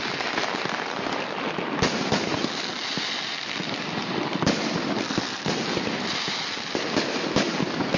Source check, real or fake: real